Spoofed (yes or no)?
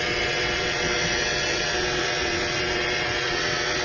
yes